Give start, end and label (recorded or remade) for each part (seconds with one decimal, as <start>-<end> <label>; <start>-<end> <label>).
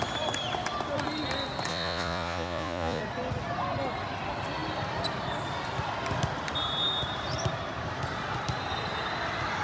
0.0-1.7 recorded; 1.7-3.0 remade; 3.0-9.6 recorded